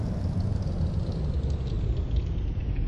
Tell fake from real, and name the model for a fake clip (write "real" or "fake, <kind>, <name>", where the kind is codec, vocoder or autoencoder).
real